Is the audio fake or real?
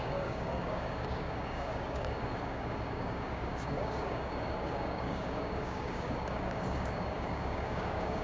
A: fake